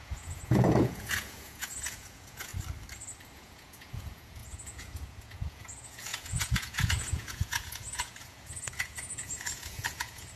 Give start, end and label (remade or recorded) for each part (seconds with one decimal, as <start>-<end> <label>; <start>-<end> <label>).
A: 0.0-2.5 remade; 2.5-3.3 recorded; 3.3-10.4 remade